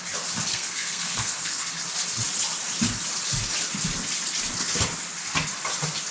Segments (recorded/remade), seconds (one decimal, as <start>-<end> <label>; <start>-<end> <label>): 0.0-0.5 recorded; 0.5-1.7 remade; 1.7-6.1 recorded